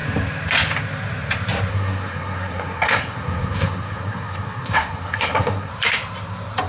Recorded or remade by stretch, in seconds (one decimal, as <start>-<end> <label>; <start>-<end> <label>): 0.0-1.7 recorded; 1.7-5.7 remade; 5.7-6.7 recorded

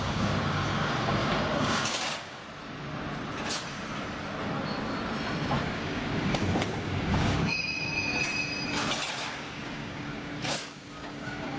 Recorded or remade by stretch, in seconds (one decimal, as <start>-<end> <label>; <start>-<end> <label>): 0.0-2.4 remade; 2.4-5.6 recorded; 5.6-7.9 remade; 7.9-9.1 recorded; 9.1-11.6 remade

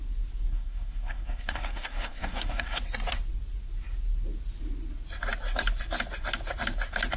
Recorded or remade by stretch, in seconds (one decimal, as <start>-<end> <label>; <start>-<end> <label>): 0.0-0.5 recorded; 0.5-2.8 remade; 2.8-7.2 recorded

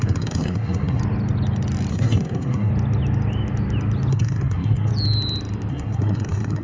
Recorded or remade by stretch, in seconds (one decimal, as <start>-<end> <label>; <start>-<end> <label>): 0.0-1.0 remade; 1.0-1.9 recorded; 1.9-2.7 remade; 2.7-4.1 recorded; 4.1-4.9 remade; 4.9-5.7 recorded; 5.7-6.6 remade